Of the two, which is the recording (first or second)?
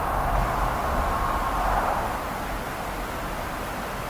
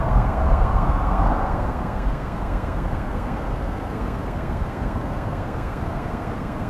first